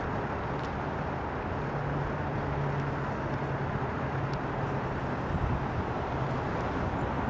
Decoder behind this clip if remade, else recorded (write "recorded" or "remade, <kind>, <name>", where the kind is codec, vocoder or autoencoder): recorded